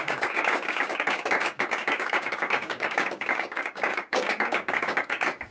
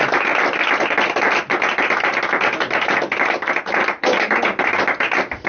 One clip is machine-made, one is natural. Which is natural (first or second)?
second